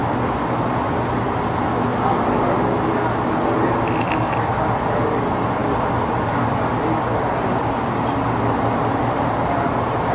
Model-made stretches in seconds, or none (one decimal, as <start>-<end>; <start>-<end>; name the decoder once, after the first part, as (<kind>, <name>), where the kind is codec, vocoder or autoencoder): none